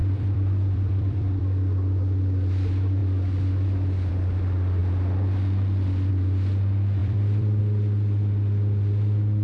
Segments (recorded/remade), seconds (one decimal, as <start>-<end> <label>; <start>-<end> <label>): 0.0-1.4 remade; 1.4-7.0 recorded; 7.0-7.6 remade; 7.6-9.4 recorded